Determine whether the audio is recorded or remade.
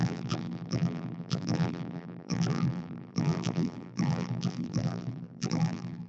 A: remade